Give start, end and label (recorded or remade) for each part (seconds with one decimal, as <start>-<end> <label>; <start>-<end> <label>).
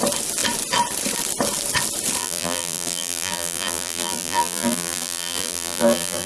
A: 0.0-2.2 recorded; 2.2-6.3 remade